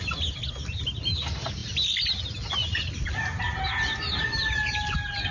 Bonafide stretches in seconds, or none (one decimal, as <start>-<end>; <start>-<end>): 0.0-5.3